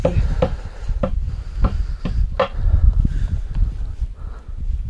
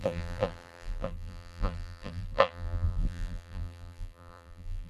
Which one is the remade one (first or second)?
second